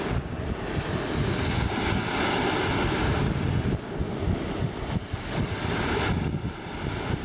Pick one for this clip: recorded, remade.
recorded